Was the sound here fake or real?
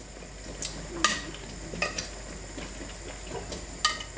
real